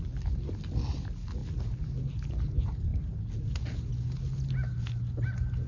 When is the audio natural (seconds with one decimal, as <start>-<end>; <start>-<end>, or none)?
0.0-5.7